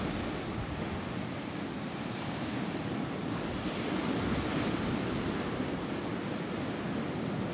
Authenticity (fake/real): real